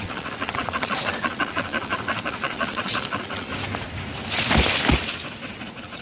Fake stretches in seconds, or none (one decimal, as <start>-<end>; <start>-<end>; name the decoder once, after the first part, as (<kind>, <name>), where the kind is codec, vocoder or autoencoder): 0.0-3.5 (vocoder, Vocos); 5.6-6.0